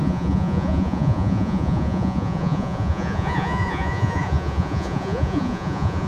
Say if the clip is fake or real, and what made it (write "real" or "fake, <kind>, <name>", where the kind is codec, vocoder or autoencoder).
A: fake, vocoder, Vocos